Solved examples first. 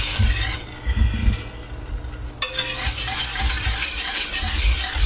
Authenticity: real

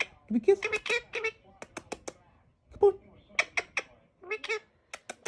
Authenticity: real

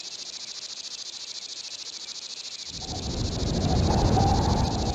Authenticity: real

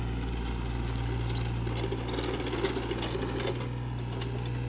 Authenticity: real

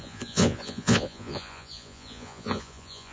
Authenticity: fake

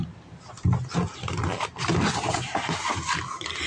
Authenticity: real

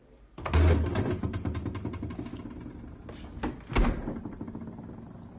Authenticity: real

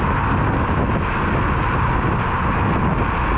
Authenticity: real